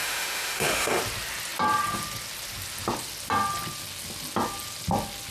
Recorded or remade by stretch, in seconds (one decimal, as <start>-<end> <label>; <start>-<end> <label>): 0.0-1.0 remade; 1.0-5.3 recorded